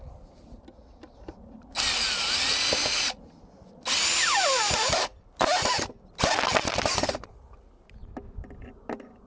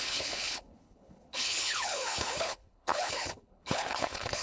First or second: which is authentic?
first